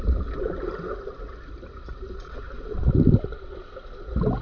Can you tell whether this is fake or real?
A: real